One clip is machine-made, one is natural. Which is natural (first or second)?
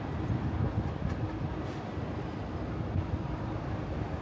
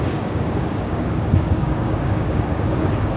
first